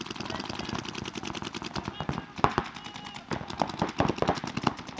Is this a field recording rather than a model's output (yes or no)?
yes